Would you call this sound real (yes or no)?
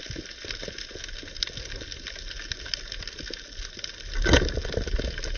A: yes